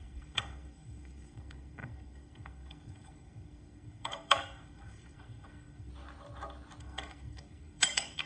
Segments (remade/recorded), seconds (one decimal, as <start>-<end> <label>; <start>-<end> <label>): 0.0-5.9 remade; 5.9-6.8 recorded; 6.8-8.3 remade